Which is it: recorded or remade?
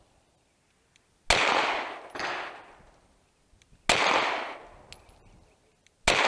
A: recorded